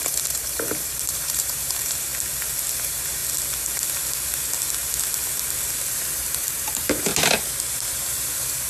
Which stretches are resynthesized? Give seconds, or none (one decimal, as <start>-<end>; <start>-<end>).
0.0-2.1; 2.7-3.2; 5.9-7.1; 7.7-8.7